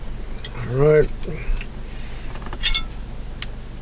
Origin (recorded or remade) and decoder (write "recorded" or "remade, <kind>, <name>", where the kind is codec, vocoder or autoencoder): recorded